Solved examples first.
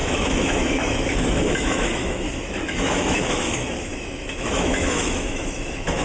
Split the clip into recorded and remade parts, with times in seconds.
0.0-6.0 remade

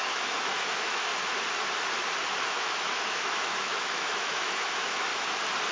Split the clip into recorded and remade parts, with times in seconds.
0.0-1.1 remade; 1.1-2.4 recorded; 2.4-5.1 remade; 5.1-5.7 recorded

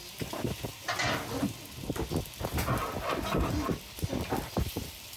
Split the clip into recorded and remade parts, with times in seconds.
0.0-5.2 recorded